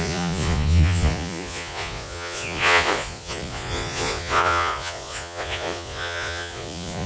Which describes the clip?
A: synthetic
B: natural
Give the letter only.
A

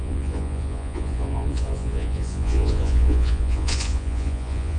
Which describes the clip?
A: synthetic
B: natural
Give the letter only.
A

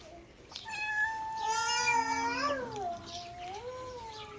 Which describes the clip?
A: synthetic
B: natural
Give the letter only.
B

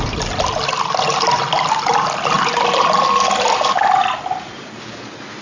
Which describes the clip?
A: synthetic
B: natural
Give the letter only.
B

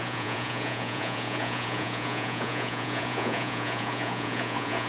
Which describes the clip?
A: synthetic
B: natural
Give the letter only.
A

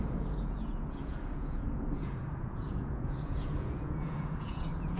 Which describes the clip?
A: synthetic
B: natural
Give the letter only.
A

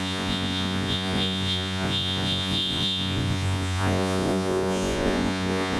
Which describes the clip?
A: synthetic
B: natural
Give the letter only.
A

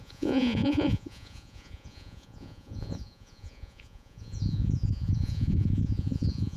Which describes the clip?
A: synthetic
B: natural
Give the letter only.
A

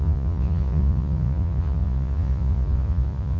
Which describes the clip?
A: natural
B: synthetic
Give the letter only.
B